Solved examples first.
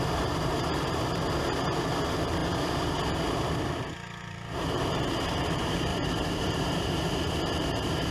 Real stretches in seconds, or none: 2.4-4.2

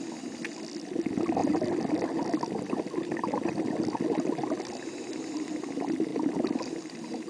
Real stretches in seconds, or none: 0.0-7.3

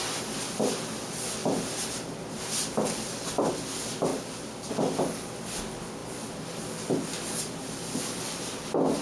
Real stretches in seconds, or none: 0.0-1.4; 2.4-9.0

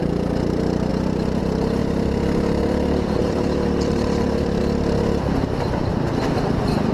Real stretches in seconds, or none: 0.9-1.4; 1.8-3.2; 4.6-5.7

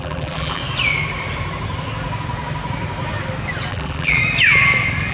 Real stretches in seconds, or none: 0.6-3.7; 4.2-5.1